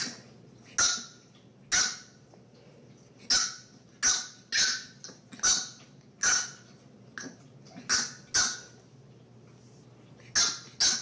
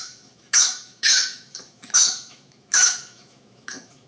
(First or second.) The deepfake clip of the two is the second